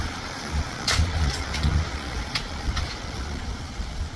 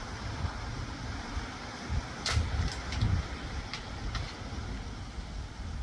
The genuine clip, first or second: second